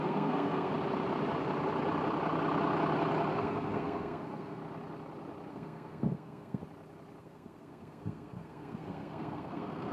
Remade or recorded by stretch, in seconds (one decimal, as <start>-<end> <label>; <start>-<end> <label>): 0.0-0.7 remade; 0.7-3.3 recorded; 3.3-4.6 remade; 4.6-5.5 recorded; 5.5-6.6 remade; 6.6-7.2 recorded; 7.2-9.9 remade